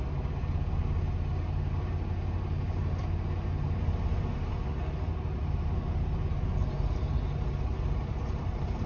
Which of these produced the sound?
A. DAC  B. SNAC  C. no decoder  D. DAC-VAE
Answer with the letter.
C